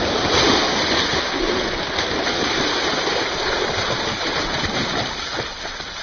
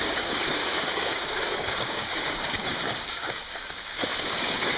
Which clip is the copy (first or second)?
second